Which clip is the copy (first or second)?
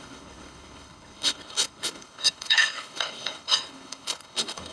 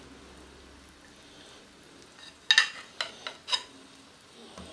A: first